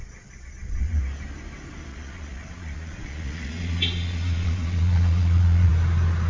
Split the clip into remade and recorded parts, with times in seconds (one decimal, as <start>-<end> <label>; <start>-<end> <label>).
0.0-1.0 remade; 1.0-1.9 recorded; 1.9-5.7 remade; 5.7-6.3 recorded